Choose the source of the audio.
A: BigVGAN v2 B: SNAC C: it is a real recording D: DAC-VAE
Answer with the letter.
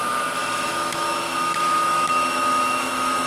D